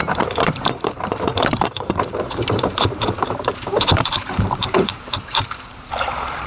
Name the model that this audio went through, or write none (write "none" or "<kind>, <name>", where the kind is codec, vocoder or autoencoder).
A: vocoder, BigVGAN v2